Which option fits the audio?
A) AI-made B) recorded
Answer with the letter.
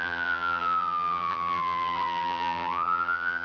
A